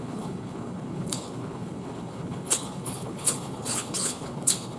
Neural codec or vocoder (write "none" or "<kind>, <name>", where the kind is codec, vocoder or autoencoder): codec, HILCodec